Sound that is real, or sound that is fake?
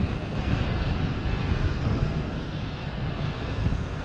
fake